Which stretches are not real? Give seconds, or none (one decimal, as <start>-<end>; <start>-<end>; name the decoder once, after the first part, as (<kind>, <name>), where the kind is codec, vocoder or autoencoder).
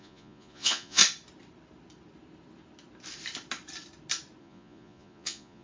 0.0-1.0 (vocoder, Vocos); 4.4-5.6